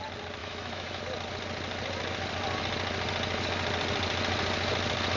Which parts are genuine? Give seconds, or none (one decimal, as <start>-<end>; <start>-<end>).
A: 0.0-0.4; 1.0-5.2